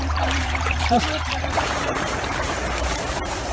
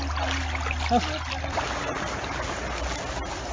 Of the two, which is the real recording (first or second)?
second